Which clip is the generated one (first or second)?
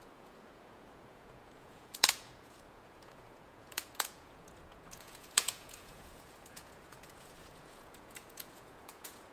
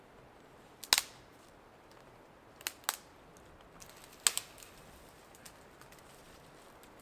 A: first